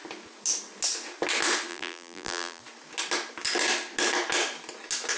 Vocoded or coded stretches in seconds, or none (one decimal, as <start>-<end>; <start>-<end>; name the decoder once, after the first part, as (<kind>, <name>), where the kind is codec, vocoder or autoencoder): 1.7-2.6 (vocoder, BigVGAN v2)